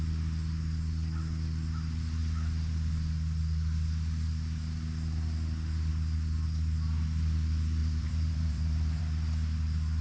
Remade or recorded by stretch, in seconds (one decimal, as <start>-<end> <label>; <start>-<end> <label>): 0.0-7.8 recorded; 7.8-9.0 remade; 9.0-10.0 recorded